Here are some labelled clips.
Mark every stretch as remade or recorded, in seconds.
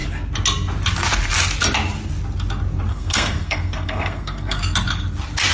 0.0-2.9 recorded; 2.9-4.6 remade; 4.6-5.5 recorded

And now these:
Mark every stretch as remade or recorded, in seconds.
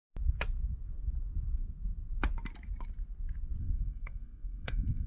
0.0-3.6 recorded; 3.6-5.1 remade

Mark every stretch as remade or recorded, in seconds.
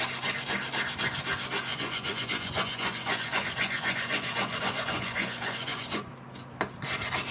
0.0-1.7 recorded; 1.7-6.1 remade; 6.1-7.3 recorded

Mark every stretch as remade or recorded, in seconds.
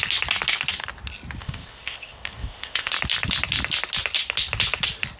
0.0-1.4 recorded; 1.4-2.9 remade; 2.9-5.2 recorded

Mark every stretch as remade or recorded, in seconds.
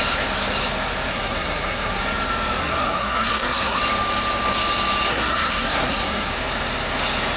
0.0-1.1 recorded; 1.1-2.0 remade; 2.0-2.6 recorded; 2.6-3.8 remade; 3.8-5.1 recorded; 5.1-6.3 remade; 6.3-7.4 recorded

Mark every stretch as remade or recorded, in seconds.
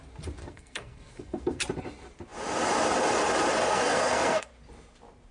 0.0-0.4 recorded; 0.4-1.6 remade; 1.6-3.7 recorded; 3.7-4.5 remade; 4.5-5.3 recorded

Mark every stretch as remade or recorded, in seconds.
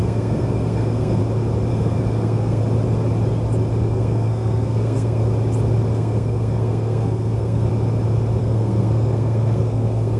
0.0-1.2 remade; 1.2-1.7 recorded; 1.7-2.6 remade; 2.6-3.8 recorded; 3.8-5.2 remade; 5.2-5.9 recorded; 5.9-7.7 remade; 7.7-8.4 recorded; 8.4-10.2 remade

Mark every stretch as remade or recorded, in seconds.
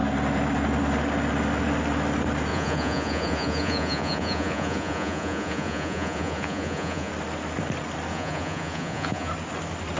0.0-2.5 recorded; 2.5-7.1 remade; 7.1-8.1 recorded; 8.1-9.3 remade; 9.3-10.0 recorded